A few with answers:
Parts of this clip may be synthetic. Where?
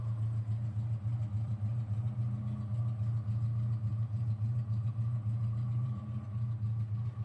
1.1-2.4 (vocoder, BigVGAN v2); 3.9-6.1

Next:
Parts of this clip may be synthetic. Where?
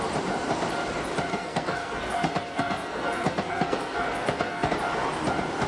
1.3-4.7 (codec, SNAC)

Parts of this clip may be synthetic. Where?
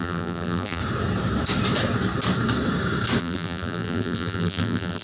0.0-0.8 (vocoder, BigVGAN v2); 3.2-5.0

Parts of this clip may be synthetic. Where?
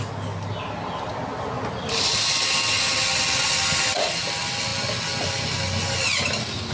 none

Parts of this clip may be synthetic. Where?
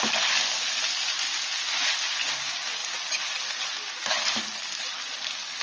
none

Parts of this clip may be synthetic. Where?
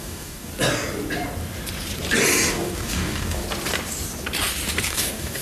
0.0-0.5 (codec, DAC); 2.5-3.4; 4.9-5.4